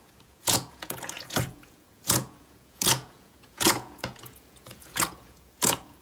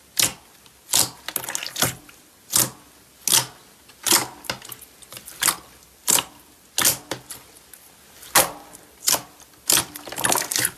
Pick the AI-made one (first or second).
first